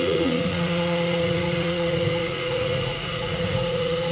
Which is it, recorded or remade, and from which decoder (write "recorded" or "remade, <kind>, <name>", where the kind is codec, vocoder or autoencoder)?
remade, vocoder, Vocos